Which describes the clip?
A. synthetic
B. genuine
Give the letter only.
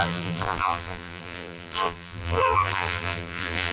A